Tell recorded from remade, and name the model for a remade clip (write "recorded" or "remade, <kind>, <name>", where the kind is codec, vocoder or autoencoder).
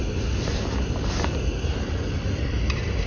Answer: recorded